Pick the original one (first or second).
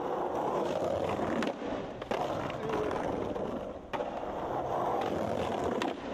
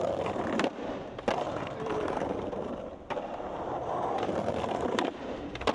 first